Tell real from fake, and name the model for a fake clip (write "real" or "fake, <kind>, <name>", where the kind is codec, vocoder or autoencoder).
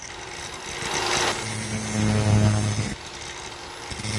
real